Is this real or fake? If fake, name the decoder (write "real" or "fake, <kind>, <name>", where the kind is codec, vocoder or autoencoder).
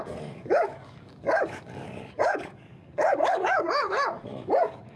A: fake, codec, DAC